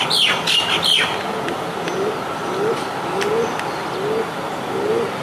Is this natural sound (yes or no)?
yes